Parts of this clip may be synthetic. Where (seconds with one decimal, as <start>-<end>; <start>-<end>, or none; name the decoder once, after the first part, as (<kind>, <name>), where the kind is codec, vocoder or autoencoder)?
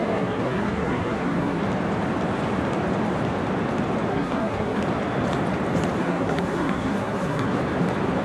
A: 0.0-1.6 (codec, SNAC); 4.1-4.8; 6.0-7.6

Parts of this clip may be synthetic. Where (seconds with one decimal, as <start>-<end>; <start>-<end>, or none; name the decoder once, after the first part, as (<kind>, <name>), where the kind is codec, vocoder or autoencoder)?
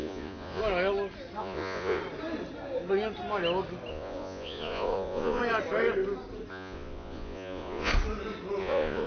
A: 0.0-0.6 (vocoder, Vocos); 1.4-2.0; 3.9-5.4; 6.5-7.9; 8.6-9.1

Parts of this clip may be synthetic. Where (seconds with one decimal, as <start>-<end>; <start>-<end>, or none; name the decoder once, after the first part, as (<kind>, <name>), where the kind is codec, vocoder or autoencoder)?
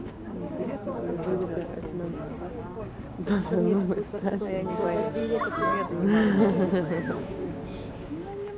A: 0.0-5.2 (codec, DAC); 6.7-8.6